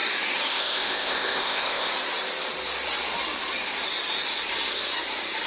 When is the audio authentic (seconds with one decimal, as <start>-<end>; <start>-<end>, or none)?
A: 0.0-0.5; 1.9-5.5